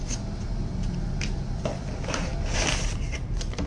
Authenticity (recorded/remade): recorded